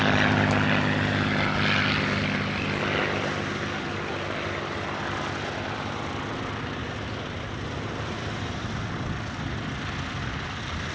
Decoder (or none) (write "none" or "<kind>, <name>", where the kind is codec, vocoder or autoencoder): none